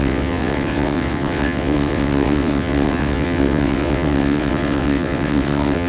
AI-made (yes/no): yes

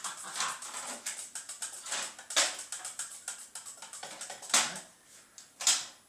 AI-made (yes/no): no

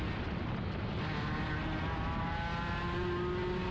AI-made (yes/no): no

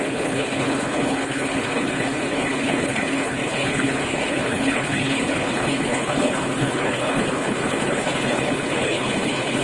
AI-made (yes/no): yes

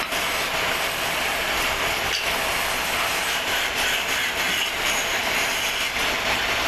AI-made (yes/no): no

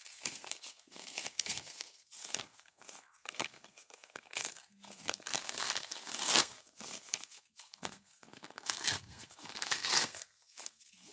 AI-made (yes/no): yes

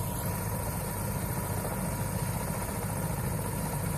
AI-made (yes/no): no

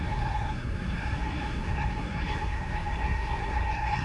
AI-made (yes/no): yes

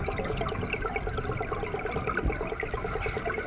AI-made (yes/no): no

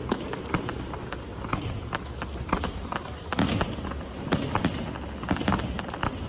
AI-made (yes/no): no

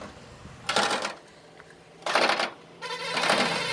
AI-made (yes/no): no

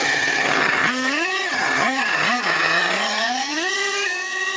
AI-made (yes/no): yes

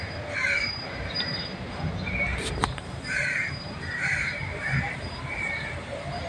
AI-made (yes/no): yes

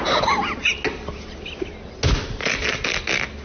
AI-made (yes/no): no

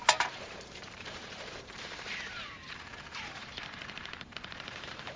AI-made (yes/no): yes